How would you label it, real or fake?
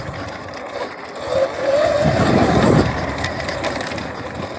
real